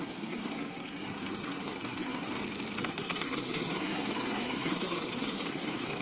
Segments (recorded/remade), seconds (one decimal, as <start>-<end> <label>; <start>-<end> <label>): 0.0-2.3 remade; 2.3-2.8 recorded; 2.8-6.0 remade